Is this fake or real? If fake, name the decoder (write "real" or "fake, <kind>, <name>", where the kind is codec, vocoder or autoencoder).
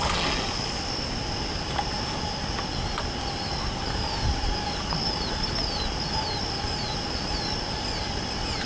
real